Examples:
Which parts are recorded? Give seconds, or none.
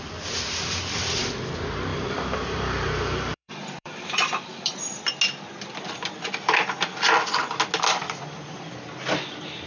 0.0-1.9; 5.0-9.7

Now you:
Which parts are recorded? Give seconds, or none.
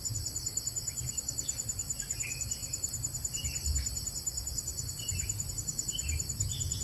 0.0-2.6; 5.5-6.8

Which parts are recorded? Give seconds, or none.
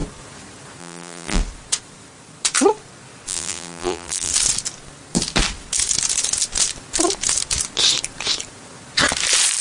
0.0-0.8; 1.4-3.3; 4.3-9.6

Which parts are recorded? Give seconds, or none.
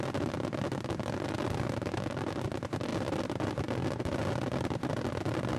0.0-5.6